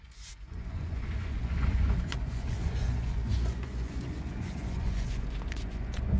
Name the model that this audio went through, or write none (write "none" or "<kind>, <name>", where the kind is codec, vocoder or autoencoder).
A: vocoder, Vocos